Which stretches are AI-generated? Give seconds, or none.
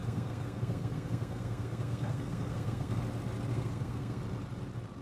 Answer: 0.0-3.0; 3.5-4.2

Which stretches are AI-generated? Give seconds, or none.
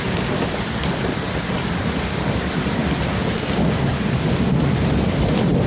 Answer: 0.0-2.8; 5.0-5.7